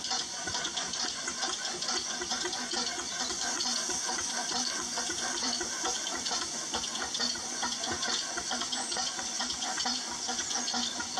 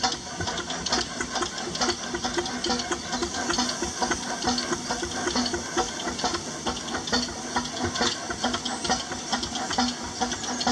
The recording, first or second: second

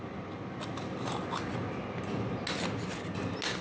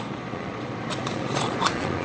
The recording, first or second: first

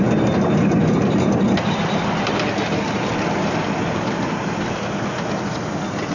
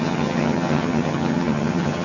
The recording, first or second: first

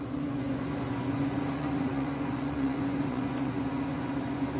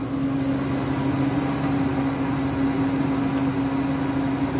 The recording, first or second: second